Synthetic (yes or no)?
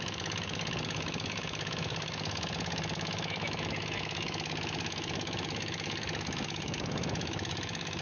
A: yes